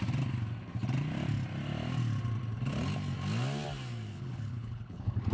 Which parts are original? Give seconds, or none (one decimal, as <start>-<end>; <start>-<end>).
0.0-4.1

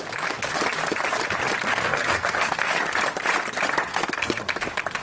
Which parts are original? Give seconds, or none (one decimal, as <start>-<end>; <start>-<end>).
0.0-1.7; 2.8-3.9; 4.4-5.0